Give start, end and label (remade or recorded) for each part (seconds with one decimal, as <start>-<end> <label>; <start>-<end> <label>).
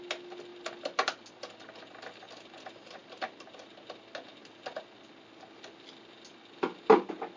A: 0.0-7.4 recorded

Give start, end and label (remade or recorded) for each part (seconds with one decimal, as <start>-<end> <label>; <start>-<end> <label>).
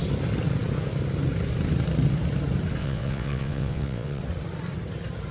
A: 0.0-2.8 recorded; 2.8-4.2 remade; 4.2-5.3 recorded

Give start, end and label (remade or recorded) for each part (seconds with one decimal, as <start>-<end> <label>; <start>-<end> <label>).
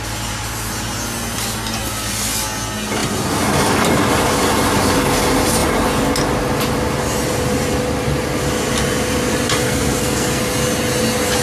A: 0.0-9.6 recorded; 9.6-10.4 remade; 10.4-11.4 recorded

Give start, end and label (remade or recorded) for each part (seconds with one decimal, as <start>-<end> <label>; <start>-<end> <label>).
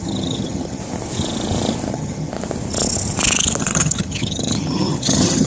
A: 0.0-0.8 remade; 0.8-1.9 recorded; 1.9-2.3 remade; 2.3-3.6 recorded; 3.6-5.5 remade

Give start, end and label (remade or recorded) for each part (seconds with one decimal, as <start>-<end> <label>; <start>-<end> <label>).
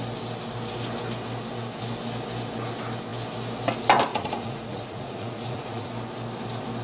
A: 0.0-4.1 recorded; 4.1-5.9 remade; 5.9-6.8 recorded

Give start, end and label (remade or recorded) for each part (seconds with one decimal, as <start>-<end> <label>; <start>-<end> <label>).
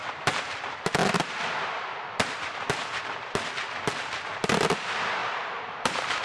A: 0.0-0.5 remade; 0.5-1.0 recorded; 1.0-3.0 remade; 3.0-5.2 recorded; 5.2-6.2 remade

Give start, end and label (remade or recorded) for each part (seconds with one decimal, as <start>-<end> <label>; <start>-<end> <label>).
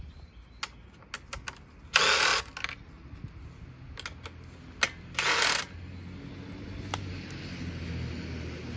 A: 0.0-8.8 recorded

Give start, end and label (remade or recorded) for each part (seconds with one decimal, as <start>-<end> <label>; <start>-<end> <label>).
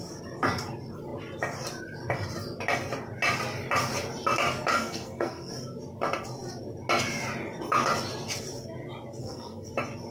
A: 0.0-4.7 recorded; 4.7-5.5 remade; 5.5-9.2 recorded; 9.2-9.7 remade; 9.7-10.1 recorded